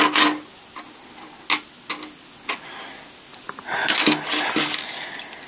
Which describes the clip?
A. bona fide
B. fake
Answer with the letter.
A